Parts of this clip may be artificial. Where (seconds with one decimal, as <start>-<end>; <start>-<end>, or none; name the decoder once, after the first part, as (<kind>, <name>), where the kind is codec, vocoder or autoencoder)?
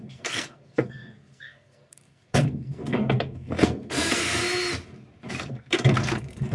0.0-4.4 (codec, SNAC); 5.3-6.5